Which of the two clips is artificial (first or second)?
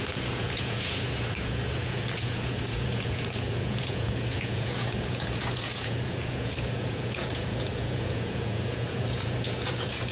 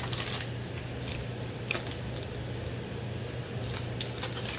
first